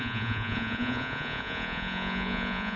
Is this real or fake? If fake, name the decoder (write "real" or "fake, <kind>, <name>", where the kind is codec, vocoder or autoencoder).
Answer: fake, vocoder, Vocos